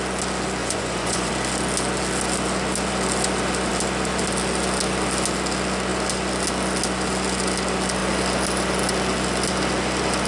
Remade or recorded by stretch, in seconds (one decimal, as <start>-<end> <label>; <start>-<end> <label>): 0.0-0.6 recorded; 0.6-1.3 remade; 1.3-10.3 recorded